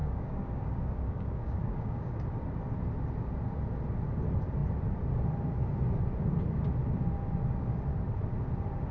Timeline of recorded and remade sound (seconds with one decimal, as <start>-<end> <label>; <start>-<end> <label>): 0.0-2.2 remade; 2.2-8.9 recorded